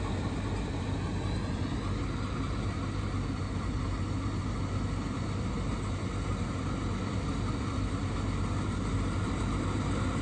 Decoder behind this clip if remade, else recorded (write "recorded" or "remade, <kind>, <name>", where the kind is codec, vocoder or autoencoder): recorded